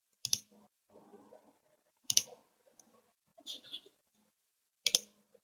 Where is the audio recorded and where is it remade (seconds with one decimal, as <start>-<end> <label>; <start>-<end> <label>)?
0.0-1.1 recorded; 1.1-2.2 remade; 2.2-3.3 recorded; 3.3-4.1 remade; 4.1-5.4 recorded